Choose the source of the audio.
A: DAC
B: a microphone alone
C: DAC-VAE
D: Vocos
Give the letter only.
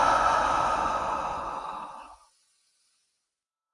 D